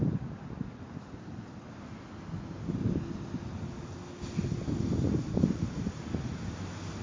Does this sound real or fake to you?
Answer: real